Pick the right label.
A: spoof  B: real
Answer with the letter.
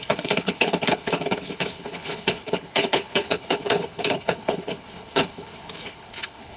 A